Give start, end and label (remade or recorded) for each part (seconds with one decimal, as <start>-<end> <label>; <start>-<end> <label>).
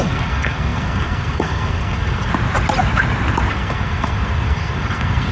0.0-2.3 remade; 2.3-3.5 recorded; 3.5-5.3 remade